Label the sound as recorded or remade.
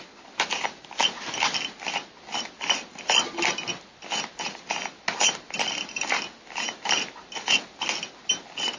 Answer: recorded